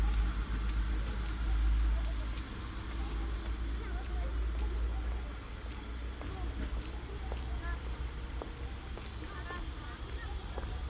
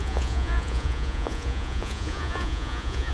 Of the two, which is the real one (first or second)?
first